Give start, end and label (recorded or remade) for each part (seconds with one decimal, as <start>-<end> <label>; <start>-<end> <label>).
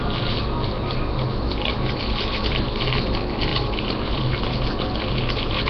0.0-5.7 recorded